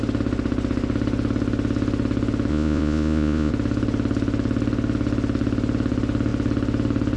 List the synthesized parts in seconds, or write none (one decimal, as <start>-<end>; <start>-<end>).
2.5-3.5